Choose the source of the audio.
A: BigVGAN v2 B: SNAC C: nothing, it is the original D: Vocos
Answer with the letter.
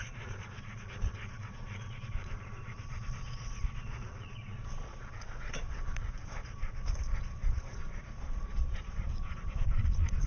D